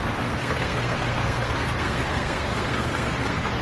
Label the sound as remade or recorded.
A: remade